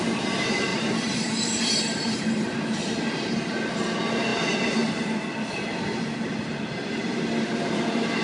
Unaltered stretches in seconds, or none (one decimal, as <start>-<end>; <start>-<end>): 0.0-0.7; 2.6-8.2